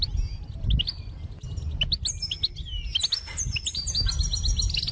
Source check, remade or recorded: recorded